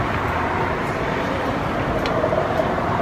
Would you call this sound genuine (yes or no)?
yes